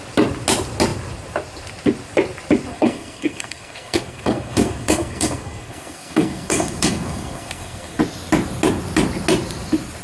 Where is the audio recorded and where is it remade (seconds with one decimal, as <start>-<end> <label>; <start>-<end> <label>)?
0.0-2.7 recorded; 2.7-8.0 remade; 8.0-10.0 recorded